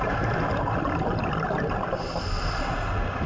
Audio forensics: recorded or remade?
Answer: recorded